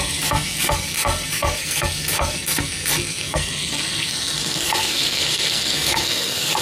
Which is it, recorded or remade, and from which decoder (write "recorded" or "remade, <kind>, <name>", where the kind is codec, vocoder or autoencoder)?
remade, codec, SNAC